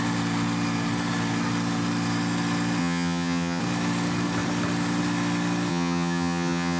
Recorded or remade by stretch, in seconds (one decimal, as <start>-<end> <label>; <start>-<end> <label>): 0.0-2.8 recorded; 2.8-3.6 remade; 3.6-5.7 recorded; 5.7-6.8 remade

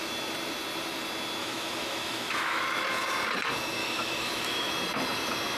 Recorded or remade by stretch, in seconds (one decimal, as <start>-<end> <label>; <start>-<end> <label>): 0.0-1.4 recorded; 1.4-2.6 remade; 2.6-3.8 recorded; 3.8-4.7 remade; 4.7-5.6 recorded

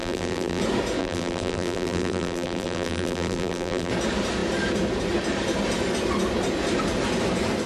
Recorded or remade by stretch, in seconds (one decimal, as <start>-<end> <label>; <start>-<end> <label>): 0.0-0.6 remade; 0.6-1.0 recorded; 1.0-3.9 remade; 3.9-7.7 recorded

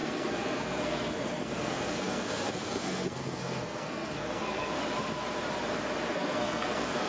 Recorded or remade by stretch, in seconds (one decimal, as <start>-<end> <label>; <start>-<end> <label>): 0.0-4.8 remade; 4.8-6.1 recorded; 6.1-7.1 remade

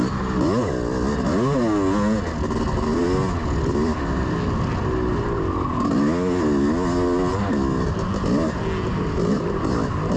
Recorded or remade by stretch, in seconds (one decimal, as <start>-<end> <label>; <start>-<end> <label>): 0.0-10.2 recorded

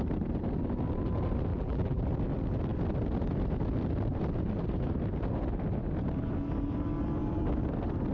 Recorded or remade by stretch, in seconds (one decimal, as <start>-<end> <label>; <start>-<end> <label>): 0.0-1.5 recorded; 1.5-2.0 remade; 2.0-8.1 recorded

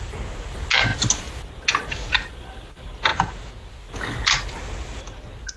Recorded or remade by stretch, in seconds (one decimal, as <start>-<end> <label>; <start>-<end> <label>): 0.0-3.1 recorded; 3.1-3.7 remade; 3.7-5.6 recorded

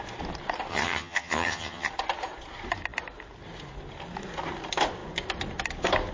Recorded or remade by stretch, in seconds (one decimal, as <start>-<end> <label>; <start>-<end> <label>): 0.0-0.7 recorded; 0.7-1.9 remade; 1.9-6.1 recorded